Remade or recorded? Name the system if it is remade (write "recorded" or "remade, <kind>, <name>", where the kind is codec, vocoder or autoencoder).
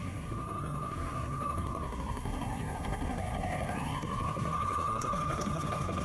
remade, codec, SNAC